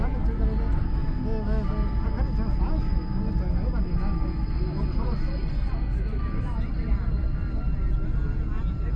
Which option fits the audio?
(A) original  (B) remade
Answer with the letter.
A